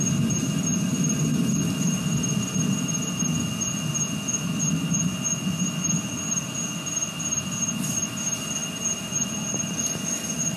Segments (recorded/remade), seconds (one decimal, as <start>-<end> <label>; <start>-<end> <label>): 0.0-10.6 recorded

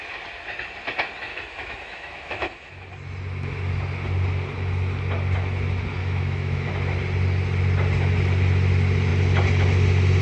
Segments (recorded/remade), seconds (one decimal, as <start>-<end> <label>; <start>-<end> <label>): 0.0-1.3 recorded; 1.3-2.7 remade; 2.7-6.0 recorded; 6.0-6.7 remade; 6.7-10.2 recorded

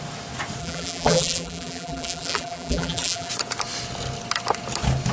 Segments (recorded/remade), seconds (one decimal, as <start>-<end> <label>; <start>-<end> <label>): 0.0-0.6 recorded; 0.6-3.3 remade; 3.3-5.1 recorded

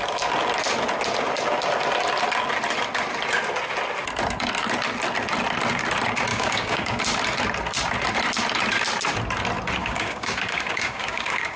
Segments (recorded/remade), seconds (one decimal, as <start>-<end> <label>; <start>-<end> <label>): 0.0-6.3 recorded; 6.3-7.0 remade; 7.0-9.8 recorded; 9.8-11.6 remade

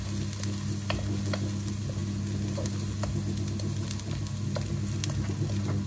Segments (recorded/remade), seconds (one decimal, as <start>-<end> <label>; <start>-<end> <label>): 0.0-5.9 recorded

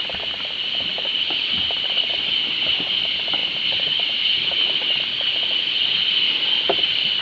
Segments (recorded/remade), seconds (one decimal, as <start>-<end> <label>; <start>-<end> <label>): 0.0-1.1 recorded; 1.1-2.0 remade; 2.0-3.4 recorded; 3.4-4.7 remade; 4.7-7.2 recorded

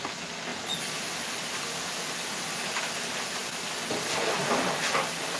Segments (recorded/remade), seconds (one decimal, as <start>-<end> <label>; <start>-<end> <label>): 0.0-5.4 recorded

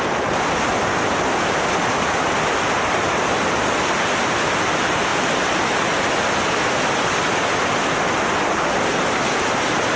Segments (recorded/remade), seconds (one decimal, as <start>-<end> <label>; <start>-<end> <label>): 0.0-10.0 recorded